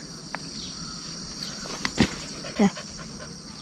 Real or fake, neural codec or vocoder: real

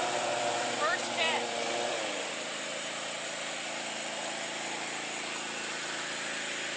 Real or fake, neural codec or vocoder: fake, vocoder, BigVGAN v2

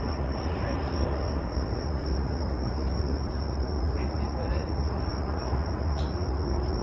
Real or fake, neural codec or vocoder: fake, vocoder, Vocos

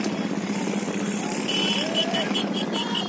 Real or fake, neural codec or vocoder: real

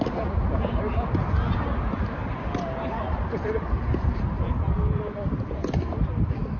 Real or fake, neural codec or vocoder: real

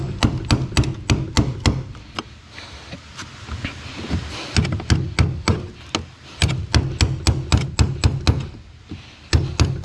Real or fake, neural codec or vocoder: real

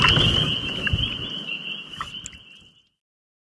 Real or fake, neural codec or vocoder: real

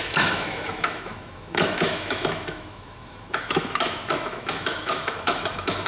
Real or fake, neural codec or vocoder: fake, autoencoder, DAC-VAE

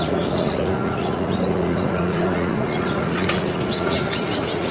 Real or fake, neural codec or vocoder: fake, vocoder, Vocos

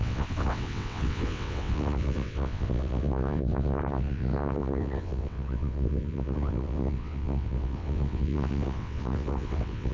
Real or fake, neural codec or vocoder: fake, vocoder, WaveNeXt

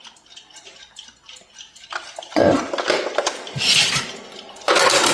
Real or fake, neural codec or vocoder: fake, vocoder, BigVGAN v2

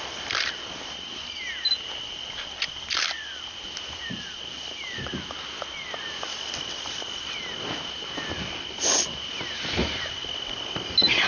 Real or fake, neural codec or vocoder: real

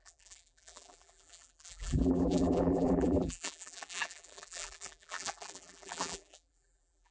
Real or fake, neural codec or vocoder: fake, vocoder, BigVGAN v2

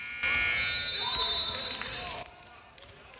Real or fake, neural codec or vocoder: real